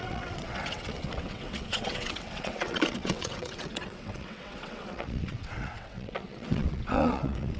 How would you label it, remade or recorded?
remade